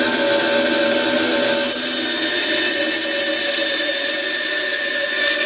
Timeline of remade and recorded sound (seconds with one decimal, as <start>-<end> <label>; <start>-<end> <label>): 0.0-3.4 recorded; 3.4-3.9 remade; 3.9-5.5 recorded